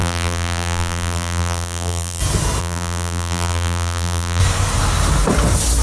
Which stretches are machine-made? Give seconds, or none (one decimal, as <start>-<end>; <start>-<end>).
0.0-2.2; 2.6-4.4